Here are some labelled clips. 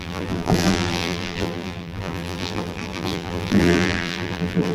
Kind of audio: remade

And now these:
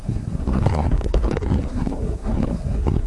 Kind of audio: remade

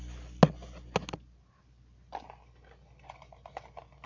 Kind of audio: recorded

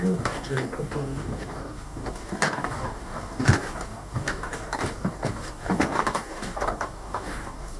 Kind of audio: remade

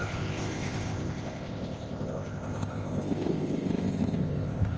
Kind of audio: remade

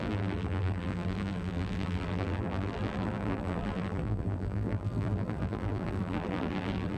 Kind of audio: remade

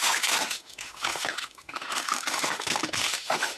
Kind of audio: remade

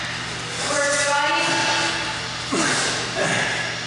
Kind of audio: recorded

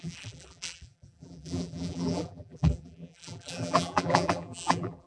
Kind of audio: remade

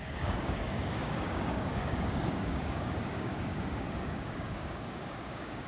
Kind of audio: remade